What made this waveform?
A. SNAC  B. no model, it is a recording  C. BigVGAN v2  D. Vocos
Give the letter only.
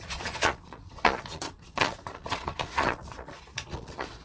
D